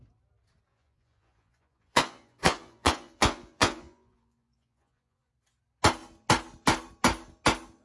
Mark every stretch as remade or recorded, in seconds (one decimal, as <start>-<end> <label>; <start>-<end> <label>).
0.0-0.7 recorded; 0.7-5.3 remade; 5.3-7.8 recorded